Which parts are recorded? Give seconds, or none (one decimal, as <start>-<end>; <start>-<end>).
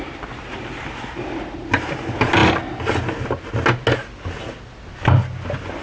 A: 0.0-5.8